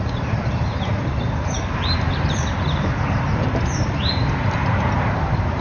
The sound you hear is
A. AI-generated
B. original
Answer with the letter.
A